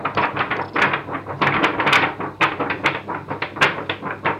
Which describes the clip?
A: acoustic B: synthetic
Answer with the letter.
A